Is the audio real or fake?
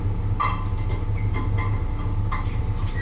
real